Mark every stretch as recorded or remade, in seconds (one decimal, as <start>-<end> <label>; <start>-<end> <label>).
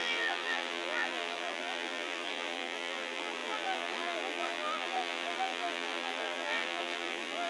0.0-7.5 remade